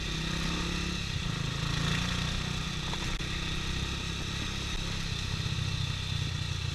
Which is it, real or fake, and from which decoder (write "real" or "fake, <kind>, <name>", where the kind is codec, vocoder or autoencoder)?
real